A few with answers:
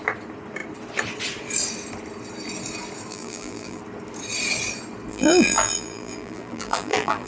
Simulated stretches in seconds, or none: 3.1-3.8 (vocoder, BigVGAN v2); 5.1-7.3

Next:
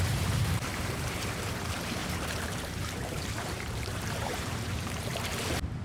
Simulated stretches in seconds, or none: 0.0-5.1 (vocoder, BigVGAN v2)

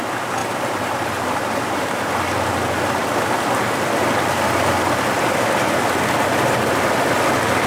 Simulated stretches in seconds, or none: 0.4-2.1 (vocoder, BigVGAN v2)

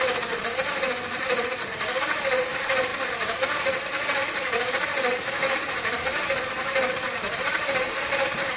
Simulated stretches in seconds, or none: 0.0-0.4 (vocoder, BigVGAN v2); 1.2-8.6

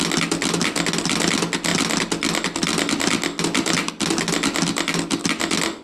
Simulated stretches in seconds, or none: none

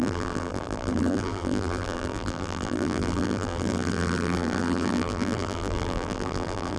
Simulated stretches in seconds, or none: 0.0-6.8 (vocoder, BigVGAN v2)

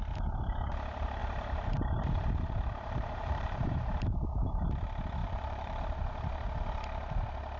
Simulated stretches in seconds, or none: 1.2-4.6 (vocoder, BigVGAN v2); 5.2-5.8

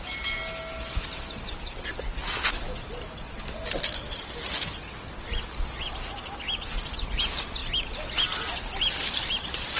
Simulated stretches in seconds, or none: 2.2-3.6 (vocoder, BigVGAN v2)